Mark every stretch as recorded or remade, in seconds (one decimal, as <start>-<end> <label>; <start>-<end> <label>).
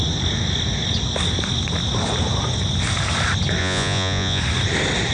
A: 0.0-3.6 recorded; 3.6-4.4 remade; 4.4-5.1 recorded